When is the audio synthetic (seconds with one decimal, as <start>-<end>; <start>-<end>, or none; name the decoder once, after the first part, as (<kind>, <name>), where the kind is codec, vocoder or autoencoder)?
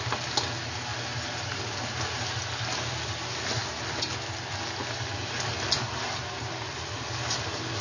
none